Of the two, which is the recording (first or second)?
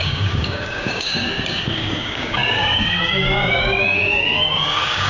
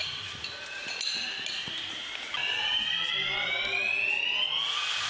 second